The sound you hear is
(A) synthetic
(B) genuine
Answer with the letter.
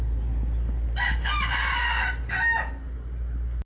B